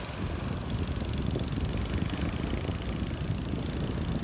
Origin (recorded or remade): recorded